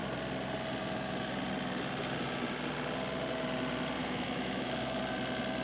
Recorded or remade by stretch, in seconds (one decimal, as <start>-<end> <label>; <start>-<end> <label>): 0.0-4.0 recorded; 4.0-5.0 remade; 5.0-5.6 recorded